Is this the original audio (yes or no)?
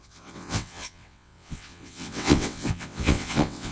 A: no